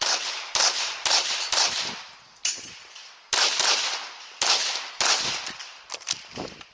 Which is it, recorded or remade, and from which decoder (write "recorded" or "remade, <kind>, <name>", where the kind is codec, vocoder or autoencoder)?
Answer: remade, vocoder, BigVGAN v2